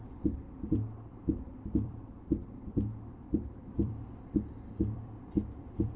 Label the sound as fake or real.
fake